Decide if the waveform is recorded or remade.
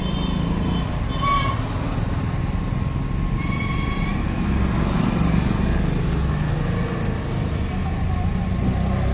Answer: recorded